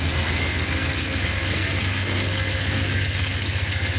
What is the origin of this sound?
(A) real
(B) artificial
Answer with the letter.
B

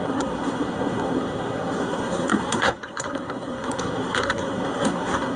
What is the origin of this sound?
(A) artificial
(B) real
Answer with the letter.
A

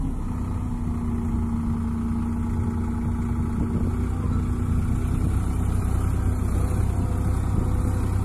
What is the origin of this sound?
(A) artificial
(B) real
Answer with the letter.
B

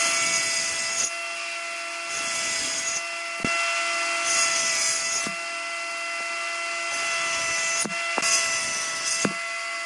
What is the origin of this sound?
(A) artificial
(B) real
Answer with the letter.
B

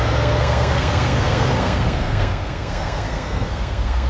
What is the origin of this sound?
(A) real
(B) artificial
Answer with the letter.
B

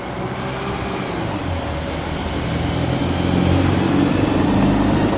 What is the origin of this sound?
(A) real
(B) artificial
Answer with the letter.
A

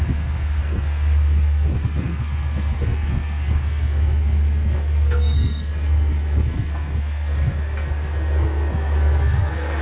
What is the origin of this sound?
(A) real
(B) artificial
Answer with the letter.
B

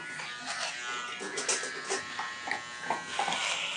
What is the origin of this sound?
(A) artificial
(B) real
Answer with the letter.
B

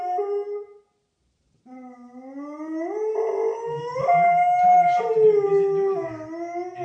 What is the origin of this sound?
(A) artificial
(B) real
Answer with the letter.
B